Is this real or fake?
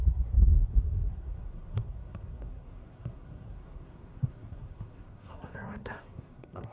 fake